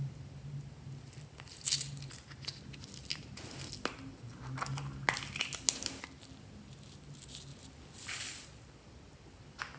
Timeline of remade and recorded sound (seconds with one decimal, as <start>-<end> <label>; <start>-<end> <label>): 0.0-9.8 recorded